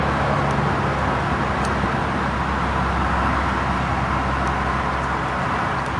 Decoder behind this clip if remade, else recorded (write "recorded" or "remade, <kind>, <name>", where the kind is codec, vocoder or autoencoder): recorded